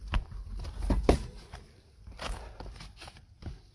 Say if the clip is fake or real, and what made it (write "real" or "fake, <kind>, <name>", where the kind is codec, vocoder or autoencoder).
fake, vocoder, BigVGAN v2